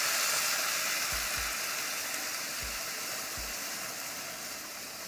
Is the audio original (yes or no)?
yes